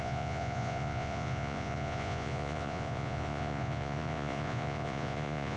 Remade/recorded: remade